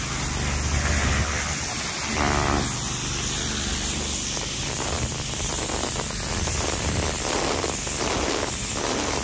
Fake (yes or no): no